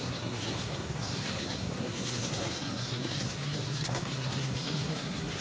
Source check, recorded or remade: remade